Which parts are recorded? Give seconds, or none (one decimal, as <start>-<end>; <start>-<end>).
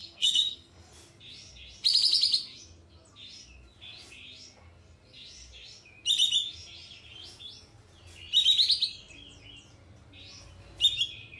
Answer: 0.9-11.4